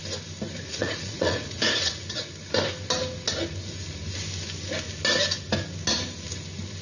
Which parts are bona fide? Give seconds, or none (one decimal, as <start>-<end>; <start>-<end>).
0.0-0.7; 2.3-6.8